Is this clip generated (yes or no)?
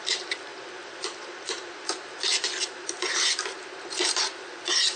no